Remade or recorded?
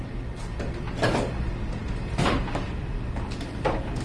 remade